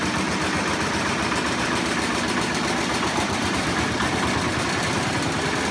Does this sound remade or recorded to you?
remade